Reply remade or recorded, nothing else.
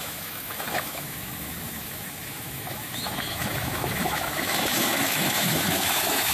remade